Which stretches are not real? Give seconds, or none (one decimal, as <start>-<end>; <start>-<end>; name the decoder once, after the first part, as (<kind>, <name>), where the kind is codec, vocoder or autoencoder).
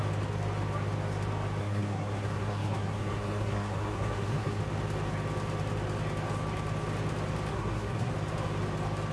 1.6-4.6 (codec, SNAC); 7.5-8.1